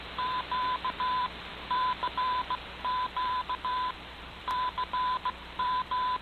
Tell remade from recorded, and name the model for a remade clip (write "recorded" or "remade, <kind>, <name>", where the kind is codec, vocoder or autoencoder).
remade, vocoder, BigVGAN v2